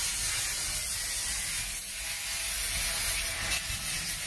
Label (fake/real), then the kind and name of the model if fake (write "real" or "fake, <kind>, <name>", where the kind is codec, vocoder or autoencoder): real